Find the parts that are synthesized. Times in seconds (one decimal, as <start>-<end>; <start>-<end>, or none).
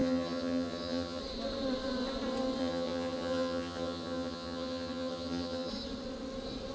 0.0-1.2; 2.6-5.7